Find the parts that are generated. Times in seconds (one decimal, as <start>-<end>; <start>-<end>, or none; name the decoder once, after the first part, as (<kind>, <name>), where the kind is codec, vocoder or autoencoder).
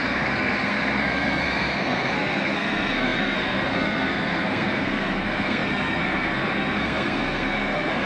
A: 0.0-8.1 (codec, SNAC)